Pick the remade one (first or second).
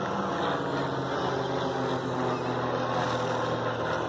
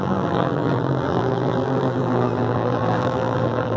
second